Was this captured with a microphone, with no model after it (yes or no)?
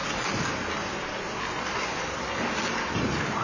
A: yes